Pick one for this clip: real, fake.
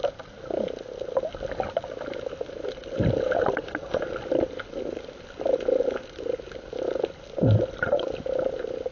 real